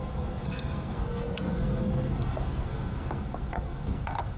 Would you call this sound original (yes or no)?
no